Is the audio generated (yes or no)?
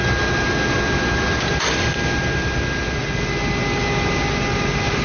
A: no